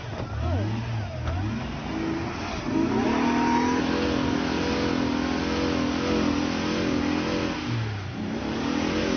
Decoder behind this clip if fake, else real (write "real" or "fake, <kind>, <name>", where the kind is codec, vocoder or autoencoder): real